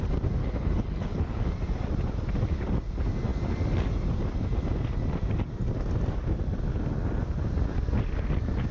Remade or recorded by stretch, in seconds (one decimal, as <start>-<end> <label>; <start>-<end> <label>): 0.0-0.4 recorded; 0.4-1.5 remade; 1.5-8.7 recorded